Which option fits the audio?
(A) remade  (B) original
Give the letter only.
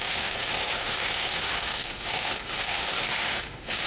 A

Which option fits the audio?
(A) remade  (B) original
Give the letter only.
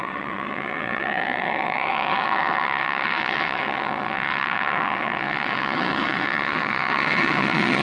A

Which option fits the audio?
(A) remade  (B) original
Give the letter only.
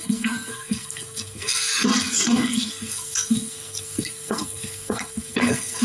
A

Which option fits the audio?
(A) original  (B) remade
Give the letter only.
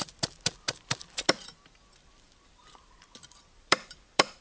B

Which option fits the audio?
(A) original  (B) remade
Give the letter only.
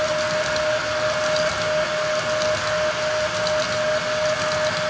A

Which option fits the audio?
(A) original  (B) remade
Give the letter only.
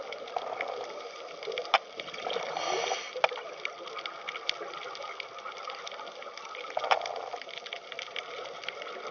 A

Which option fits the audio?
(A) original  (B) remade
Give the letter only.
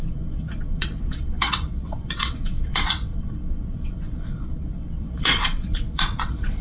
B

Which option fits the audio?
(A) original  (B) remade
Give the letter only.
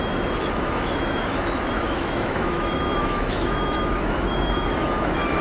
B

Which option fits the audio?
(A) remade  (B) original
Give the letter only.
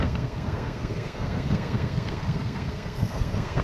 A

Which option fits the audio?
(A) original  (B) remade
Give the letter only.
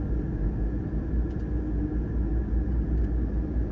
A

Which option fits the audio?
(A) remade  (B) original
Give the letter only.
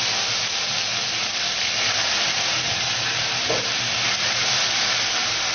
B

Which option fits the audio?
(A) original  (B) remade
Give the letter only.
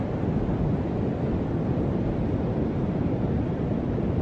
B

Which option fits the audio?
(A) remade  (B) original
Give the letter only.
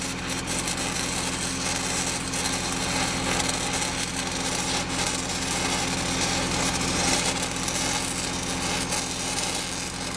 B